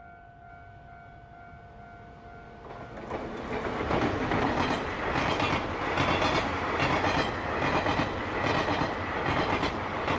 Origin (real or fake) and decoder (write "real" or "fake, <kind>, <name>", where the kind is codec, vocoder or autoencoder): real